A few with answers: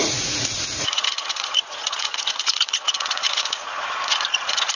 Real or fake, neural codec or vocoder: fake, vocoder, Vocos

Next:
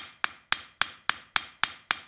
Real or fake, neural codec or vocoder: real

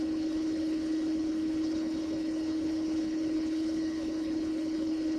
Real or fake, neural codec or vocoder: fake, codec, HILCodec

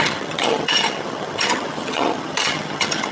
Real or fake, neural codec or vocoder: fake, vocoder, HiFi-GAN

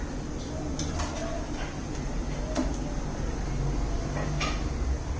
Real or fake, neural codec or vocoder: real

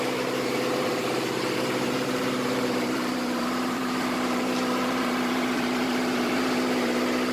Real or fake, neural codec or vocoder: fake, vocoder, BigVGAN v2